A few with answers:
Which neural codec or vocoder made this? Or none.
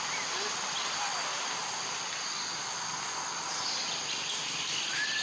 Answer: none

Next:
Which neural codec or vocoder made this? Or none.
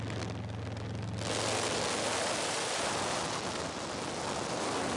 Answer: none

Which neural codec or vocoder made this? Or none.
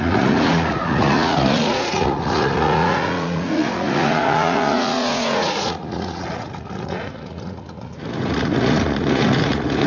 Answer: vocoder, Vocos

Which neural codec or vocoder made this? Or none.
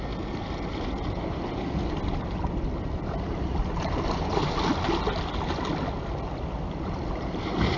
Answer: none